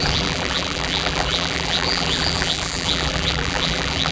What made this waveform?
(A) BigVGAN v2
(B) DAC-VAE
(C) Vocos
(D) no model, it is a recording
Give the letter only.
A